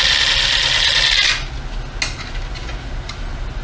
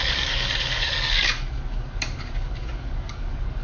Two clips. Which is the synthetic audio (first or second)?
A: second